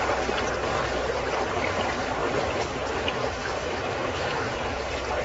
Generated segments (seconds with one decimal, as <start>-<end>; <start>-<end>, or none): 3.4-4.8